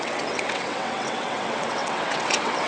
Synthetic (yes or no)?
yes